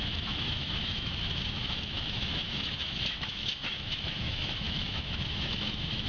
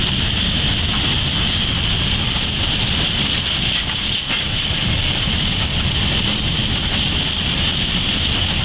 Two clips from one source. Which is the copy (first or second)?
first